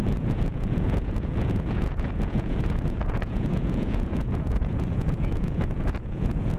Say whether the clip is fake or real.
fake